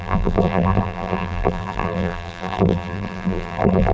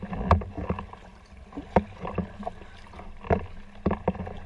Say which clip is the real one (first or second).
second